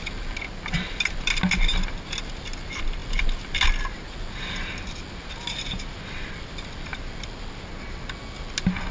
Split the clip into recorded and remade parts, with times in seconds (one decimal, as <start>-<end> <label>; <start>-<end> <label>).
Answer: 0.0-8.9 recorded